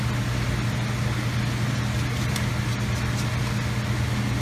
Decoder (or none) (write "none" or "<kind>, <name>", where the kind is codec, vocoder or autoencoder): none